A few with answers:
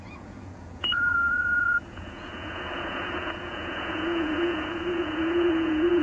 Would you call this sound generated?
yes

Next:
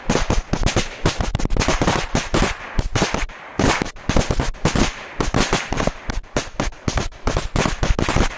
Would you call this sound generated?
no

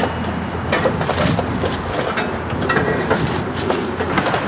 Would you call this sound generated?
no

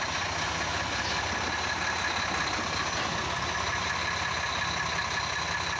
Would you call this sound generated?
no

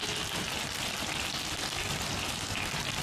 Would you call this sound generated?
no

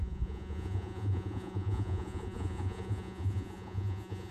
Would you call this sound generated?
yes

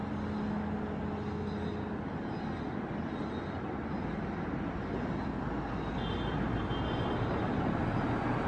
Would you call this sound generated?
no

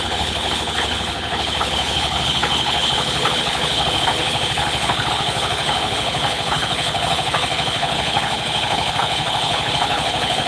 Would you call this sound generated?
yes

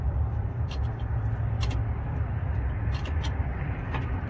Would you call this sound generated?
yes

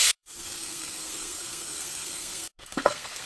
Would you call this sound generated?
yes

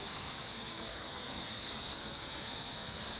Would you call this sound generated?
yes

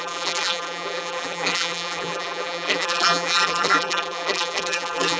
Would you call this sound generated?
yes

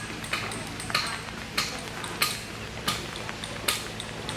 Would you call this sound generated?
no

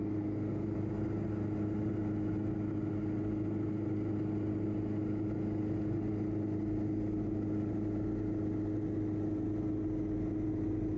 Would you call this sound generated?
no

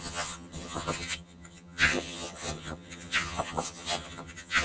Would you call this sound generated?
yes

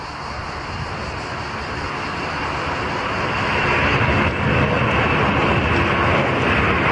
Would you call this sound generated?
no